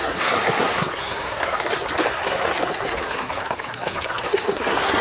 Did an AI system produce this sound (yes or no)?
yes